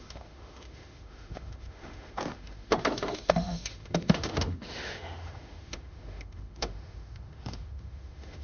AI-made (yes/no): yes